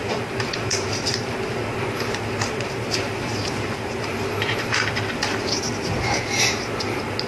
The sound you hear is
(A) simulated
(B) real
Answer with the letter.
B